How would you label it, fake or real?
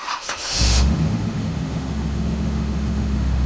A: fake